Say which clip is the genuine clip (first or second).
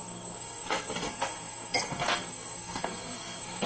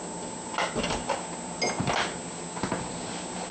second